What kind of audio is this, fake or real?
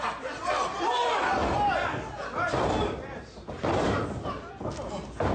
real